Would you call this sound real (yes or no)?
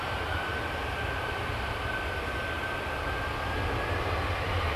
yes